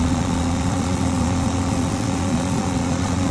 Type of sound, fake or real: fake